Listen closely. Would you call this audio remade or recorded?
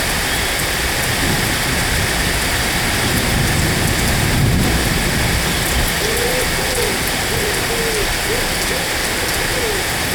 recorded